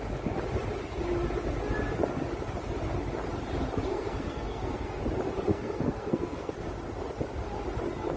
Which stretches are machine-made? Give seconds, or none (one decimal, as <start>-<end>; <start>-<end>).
3.9-5.0; 5.5-6.5